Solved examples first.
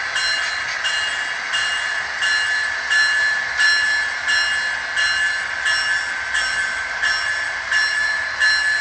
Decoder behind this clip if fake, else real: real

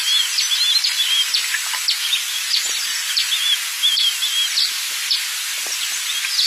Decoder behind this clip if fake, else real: real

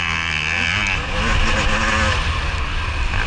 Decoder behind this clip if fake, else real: real